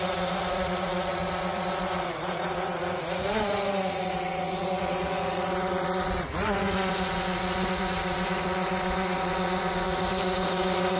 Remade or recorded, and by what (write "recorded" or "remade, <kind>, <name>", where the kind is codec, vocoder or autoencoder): remade, vocoder, Vocos